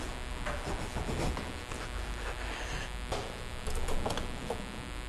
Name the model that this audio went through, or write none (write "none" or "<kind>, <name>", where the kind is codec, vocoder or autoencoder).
none